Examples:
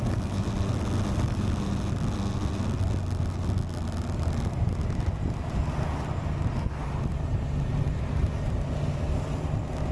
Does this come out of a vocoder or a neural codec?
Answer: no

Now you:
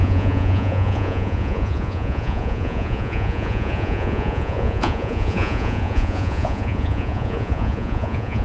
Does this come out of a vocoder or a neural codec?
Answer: yes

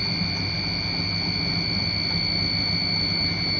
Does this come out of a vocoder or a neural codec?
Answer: no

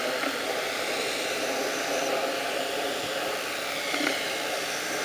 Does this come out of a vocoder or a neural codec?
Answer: no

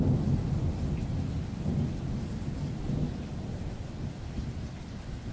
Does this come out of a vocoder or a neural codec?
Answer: no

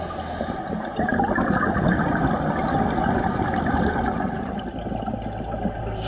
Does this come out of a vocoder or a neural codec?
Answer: no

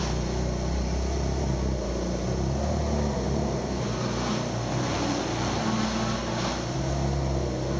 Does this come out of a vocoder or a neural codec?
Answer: no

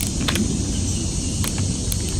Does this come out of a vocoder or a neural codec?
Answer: no